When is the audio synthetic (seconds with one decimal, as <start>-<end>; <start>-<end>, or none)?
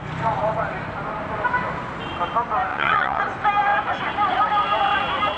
2.7-3.2